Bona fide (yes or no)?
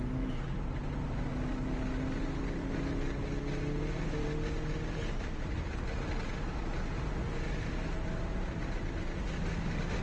yes